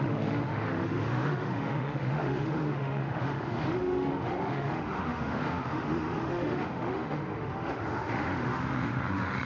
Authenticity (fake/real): fake